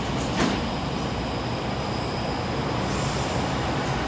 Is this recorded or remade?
recorded